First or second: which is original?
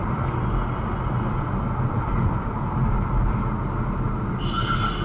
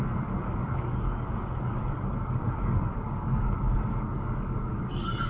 first